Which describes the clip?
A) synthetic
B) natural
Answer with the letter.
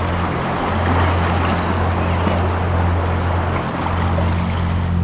B